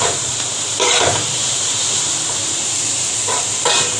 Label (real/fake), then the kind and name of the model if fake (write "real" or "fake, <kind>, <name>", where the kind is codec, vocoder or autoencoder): fake, vocoder, BigVGAN v2